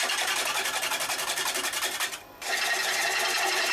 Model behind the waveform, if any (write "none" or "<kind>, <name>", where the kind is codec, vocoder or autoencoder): none